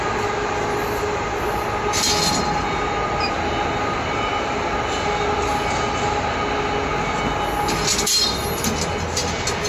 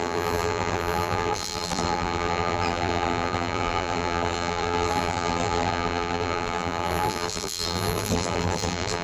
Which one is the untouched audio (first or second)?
first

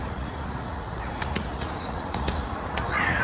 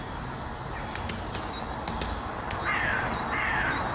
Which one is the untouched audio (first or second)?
second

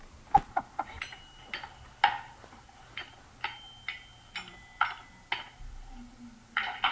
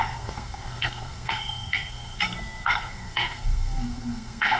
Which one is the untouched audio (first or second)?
first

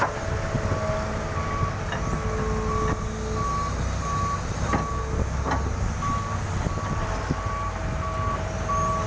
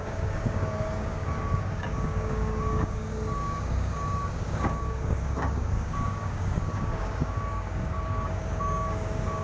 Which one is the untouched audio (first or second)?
first